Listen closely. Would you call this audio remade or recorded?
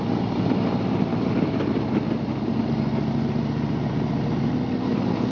recorded